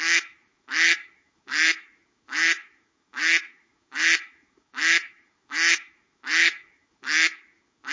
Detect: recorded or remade remade